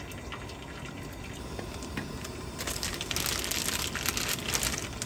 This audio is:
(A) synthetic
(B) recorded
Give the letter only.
B